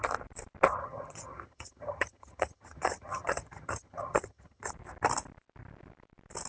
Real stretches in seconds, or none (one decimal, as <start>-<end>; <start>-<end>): 0.0-0.8; 4.7-6.5